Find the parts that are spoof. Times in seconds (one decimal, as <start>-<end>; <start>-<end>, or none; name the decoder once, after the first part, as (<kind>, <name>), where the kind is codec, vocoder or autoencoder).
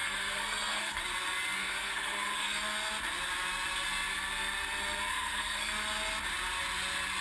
0.0-1.0 (codec, SNAC); 1.6-2.6; 5.1-5.7